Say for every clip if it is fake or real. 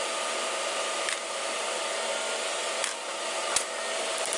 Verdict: real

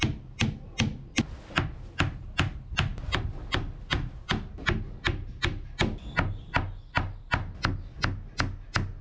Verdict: real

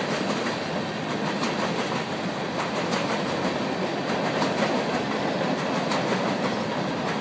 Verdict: real